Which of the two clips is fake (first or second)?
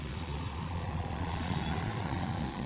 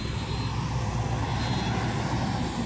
first